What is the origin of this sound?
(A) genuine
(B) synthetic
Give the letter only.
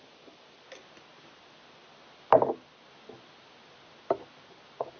A